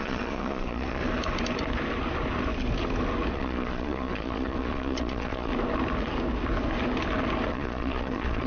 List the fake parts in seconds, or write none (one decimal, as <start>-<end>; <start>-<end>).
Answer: 0.0-1.0; 3.3-5.5; 7.5-8.5